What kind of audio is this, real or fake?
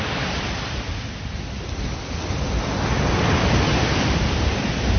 real